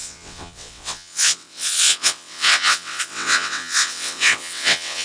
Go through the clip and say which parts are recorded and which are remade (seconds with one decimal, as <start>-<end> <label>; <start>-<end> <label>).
0.0-5.0 remade